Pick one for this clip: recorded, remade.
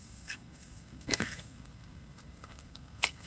remade